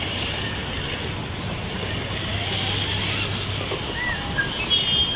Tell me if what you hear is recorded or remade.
recorded